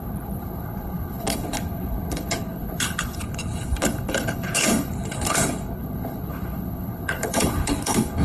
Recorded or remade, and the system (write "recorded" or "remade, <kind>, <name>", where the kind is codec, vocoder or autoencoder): remade, codec, HILCodec